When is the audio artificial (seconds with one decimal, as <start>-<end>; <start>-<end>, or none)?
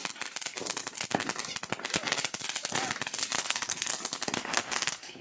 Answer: 3.4-3.9; 4.4-5.2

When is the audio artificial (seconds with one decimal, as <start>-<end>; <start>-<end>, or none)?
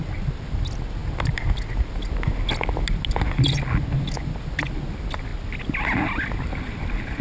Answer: none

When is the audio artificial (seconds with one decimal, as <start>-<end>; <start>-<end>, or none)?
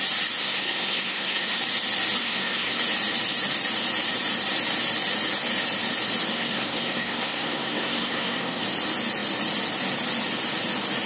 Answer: 0.4-1.6; 2.2-2.8; 6.3-8.6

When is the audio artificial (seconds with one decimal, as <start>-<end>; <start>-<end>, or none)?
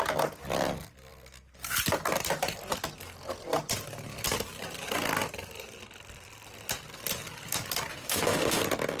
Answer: 7.9-8.6